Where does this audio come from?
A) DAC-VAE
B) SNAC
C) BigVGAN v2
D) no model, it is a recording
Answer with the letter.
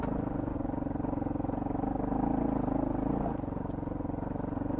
D